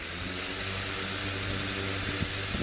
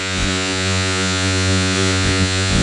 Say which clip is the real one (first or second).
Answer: first